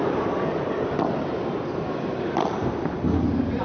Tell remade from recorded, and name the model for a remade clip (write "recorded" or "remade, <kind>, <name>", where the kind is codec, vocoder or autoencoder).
recorded